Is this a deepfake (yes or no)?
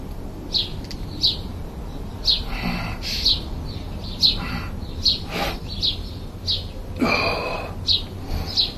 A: no